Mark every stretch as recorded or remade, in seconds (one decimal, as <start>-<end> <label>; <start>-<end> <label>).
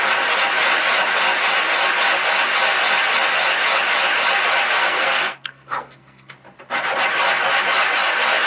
0.0-4.8 recorded; 4.8-6.3 remade; 6.3-8.5 recorded